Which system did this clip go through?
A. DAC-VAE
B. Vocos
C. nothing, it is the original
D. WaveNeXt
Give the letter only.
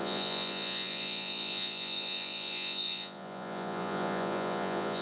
B